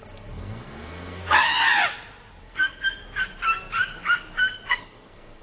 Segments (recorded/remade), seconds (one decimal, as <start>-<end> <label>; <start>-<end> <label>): 0.0-1.5 remade; 1.5-2.4 recorded; 2.4-3.0 remade; 3.0-4.7 recorded; 4.7-5.4 remade